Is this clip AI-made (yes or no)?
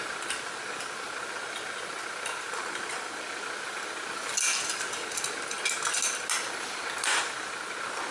no